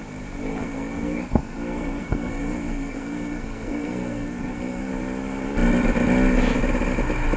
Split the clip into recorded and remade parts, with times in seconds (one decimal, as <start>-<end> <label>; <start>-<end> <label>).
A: 0.0-0.5 recorded; 0.5-4.9 remade; 4.9-7.4 recorded